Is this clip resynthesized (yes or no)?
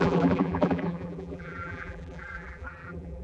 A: yes